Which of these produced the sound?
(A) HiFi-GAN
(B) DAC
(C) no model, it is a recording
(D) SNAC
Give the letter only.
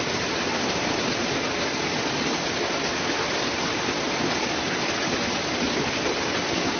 C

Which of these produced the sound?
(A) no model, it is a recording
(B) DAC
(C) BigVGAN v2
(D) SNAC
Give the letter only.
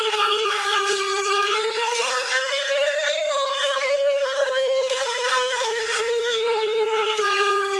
D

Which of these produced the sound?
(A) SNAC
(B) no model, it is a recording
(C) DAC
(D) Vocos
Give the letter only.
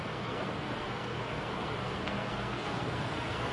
A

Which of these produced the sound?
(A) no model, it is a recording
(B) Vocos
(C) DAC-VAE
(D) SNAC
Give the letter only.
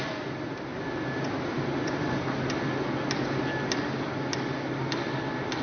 A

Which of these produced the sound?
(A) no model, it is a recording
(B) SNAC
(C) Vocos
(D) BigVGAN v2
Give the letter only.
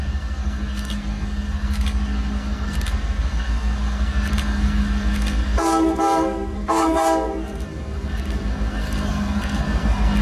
B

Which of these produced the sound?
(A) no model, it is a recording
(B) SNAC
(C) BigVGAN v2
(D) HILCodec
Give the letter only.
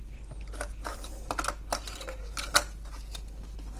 A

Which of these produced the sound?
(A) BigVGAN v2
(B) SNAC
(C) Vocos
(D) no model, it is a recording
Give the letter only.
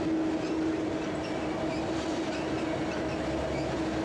D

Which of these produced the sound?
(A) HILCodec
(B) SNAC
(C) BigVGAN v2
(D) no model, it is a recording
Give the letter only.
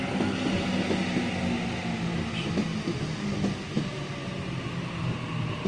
D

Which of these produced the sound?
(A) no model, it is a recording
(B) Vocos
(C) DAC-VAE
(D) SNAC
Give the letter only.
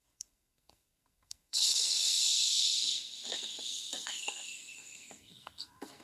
D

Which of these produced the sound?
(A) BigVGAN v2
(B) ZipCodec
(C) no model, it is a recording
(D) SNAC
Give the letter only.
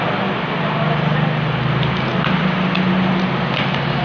C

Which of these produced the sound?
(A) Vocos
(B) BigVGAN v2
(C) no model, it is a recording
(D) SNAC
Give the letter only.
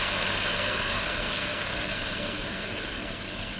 D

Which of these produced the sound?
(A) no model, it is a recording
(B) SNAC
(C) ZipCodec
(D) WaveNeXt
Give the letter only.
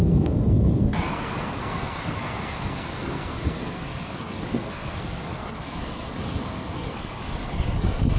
B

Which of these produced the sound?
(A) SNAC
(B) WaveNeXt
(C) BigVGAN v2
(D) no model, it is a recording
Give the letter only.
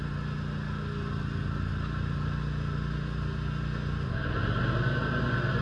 D